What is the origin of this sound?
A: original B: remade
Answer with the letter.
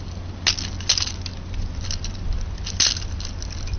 A